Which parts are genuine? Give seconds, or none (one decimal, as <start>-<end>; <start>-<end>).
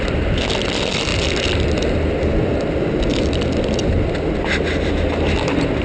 0.0-5.8